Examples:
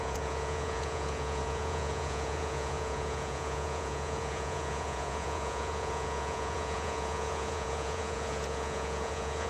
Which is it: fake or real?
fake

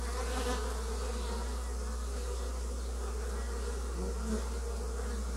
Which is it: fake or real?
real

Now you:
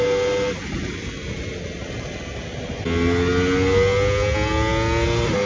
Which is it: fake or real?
real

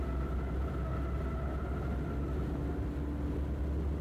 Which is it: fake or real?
real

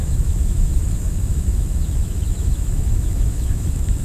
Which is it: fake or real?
fake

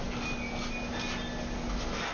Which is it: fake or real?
real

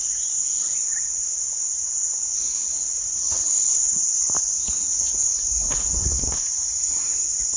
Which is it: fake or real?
fake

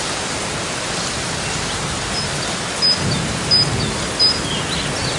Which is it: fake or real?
real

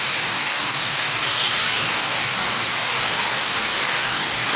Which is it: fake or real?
fake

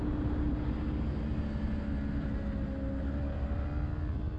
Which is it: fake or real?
real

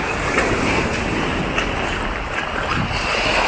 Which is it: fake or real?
real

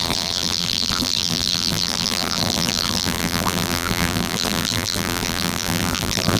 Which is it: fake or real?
fake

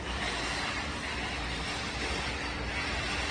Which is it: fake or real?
real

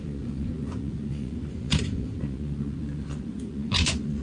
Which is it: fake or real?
fake